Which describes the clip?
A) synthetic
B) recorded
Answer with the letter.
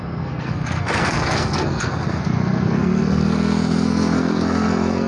A